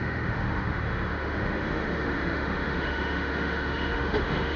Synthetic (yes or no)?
yes